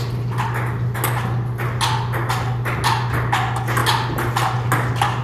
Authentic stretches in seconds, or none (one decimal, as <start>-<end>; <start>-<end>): 0.0-5.2